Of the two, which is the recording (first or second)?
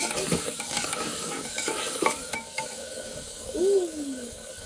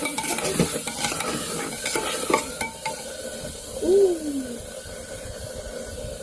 second